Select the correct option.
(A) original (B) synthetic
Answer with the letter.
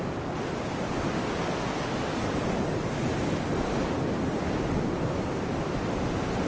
A